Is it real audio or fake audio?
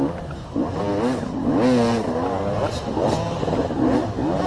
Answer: real